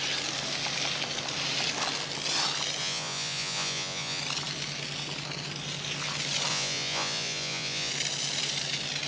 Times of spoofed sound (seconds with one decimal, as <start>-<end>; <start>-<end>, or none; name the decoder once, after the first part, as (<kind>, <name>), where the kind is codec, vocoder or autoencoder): 2.8-4.2 (vocoder, Vocos); 6.5-7.9